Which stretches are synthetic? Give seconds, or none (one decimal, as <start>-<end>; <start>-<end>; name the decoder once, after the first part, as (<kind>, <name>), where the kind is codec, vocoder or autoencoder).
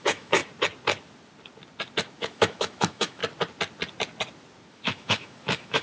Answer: 0.0-0.4 (autoencoder, DAC-VAE); 2.2-3.2; 4.7-5.8